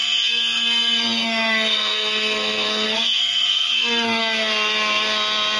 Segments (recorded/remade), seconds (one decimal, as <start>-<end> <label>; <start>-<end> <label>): 0.0-4.2 remade; 4.2-5.6 recorded